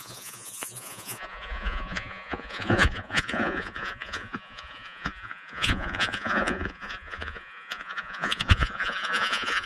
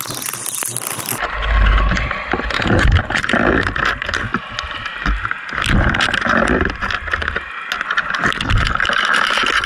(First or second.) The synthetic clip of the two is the first